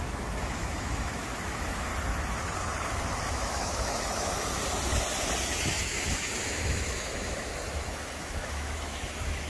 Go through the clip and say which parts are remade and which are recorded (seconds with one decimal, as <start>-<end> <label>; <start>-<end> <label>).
0.0-1.9 remade; 1.9-3.3 recorded; 3.3-4.6 remade; 4.6-5.4 recorded; 5.4-9.5 remade